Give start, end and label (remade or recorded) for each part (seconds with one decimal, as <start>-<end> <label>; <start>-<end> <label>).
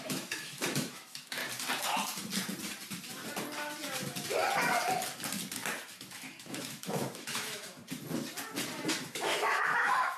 0.0-1.4 remade; 1.4-5.9 recorded; 5.9-7.8 remade; 7.8-9.0 recorded; 9.0-10.2 remade